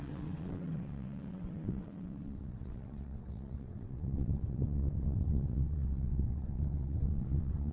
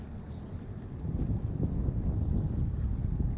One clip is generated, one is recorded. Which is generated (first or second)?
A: first